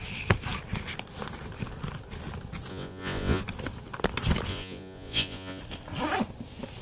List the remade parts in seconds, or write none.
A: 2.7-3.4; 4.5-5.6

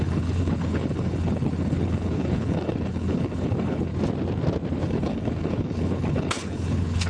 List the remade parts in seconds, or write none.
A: 0.0-3.9; 4.8-7.1

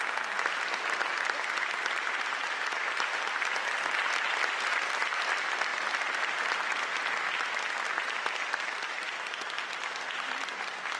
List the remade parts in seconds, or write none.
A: none

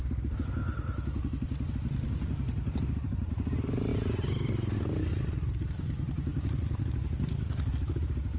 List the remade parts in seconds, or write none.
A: none